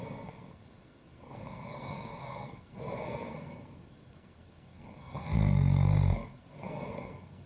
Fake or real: fake